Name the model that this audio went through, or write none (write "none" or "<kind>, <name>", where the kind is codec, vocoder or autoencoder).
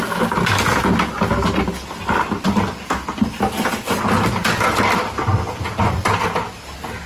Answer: none